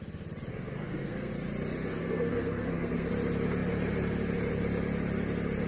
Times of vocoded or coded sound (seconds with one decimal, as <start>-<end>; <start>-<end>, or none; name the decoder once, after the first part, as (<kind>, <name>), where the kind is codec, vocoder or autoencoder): 0.5-1.3 (codec, SNAC); 2.0-3.1